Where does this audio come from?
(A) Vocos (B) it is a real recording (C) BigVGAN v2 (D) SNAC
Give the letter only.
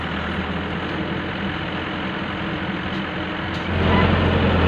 B